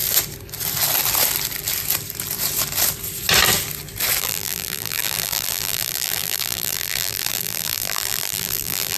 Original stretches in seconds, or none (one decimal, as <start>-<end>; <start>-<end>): 0.0-4.2

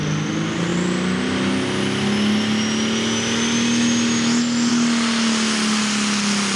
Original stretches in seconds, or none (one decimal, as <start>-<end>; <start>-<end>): 0.0-6.6

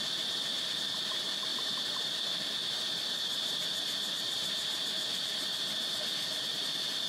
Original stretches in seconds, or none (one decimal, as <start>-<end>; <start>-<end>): 0.0-1.5; 2.1-2.6; 5.2-7.1